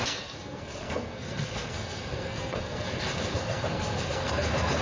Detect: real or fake fake